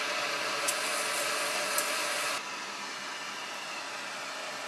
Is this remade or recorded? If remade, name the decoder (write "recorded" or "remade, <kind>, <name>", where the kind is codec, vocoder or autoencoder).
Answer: recorded